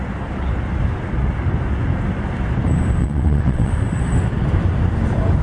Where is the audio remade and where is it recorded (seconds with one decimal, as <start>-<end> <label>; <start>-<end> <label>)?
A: 0.0-3.0 recorded; 3.0-3.7 remade; 3.7-5.4 recorded